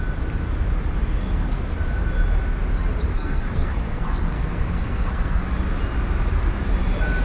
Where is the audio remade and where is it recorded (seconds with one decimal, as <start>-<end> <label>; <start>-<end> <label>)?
0.0-1.1 recorded; 1.1-1.6 remade; 1.6-3.1 recorded; 3.1-5.4 remade; 5.4-7.2 recorded